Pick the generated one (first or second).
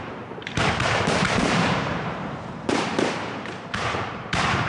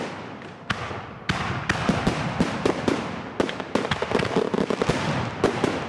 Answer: first